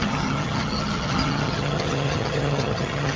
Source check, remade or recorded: remade